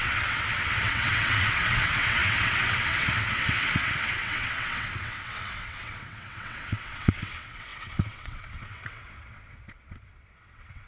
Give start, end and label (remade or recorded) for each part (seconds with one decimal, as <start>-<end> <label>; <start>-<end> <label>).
0.0-10.9 remade